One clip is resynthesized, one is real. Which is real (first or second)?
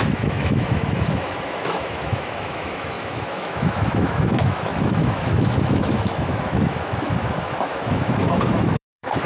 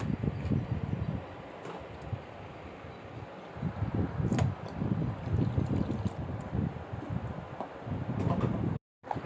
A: second